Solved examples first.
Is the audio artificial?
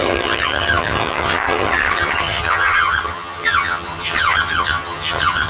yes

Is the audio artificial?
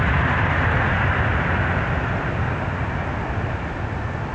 no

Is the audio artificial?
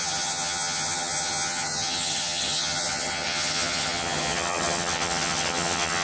yes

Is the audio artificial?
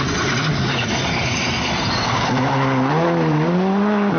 no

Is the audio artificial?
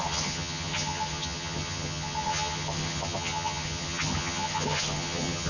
yes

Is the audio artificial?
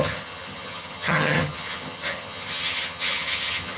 yes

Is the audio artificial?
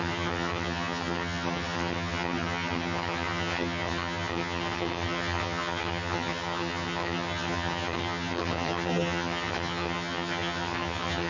yes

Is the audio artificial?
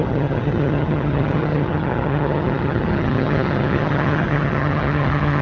yes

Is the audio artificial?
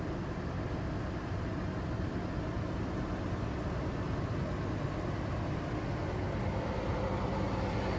no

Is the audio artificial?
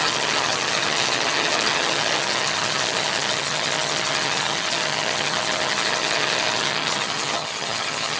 yes